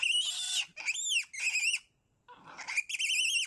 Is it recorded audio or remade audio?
recorded